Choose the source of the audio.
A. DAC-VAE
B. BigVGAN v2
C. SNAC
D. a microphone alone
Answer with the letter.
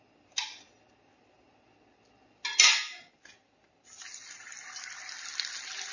D